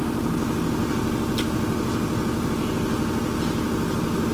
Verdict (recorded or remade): recorded